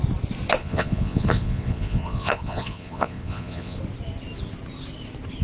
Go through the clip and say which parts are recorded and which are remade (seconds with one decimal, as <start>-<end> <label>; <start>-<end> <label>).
0.0-0.6 recorded; 0.6-3.8 remade; 3.8-5.4 recorded